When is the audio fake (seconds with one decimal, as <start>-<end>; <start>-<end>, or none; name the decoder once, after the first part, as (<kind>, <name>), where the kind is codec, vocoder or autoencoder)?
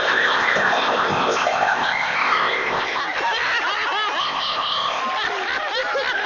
0.0-3.0 (codec, ZipCodec); 4.2-5.0